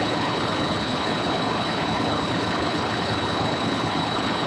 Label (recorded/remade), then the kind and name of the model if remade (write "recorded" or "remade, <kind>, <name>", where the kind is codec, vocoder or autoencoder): remade, codec, HILCodec